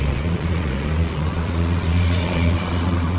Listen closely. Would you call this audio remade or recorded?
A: remade